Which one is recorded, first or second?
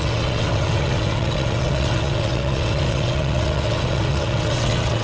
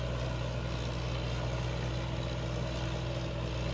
second